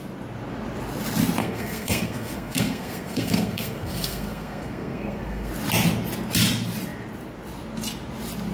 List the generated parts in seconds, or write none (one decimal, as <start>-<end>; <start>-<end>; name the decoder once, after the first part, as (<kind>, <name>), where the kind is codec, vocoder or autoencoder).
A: 1.4-5.5 (codec, SNAC)